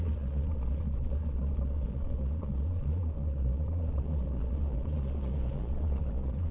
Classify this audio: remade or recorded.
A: remade